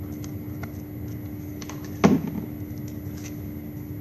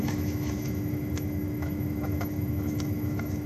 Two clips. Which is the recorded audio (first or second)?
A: first